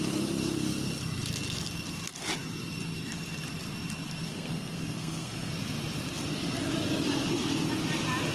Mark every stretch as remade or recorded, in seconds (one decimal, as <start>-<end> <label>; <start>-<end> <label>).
0.0-4.3 recorded; 4.3-5.5 remade; 5.5-8.3 recorded